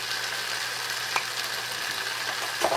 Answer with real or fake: real